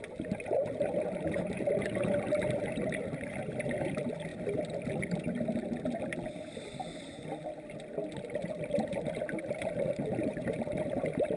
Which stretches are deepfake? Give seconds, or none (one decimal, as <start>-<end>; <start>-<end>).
0.0-4.3; 8.5-11.4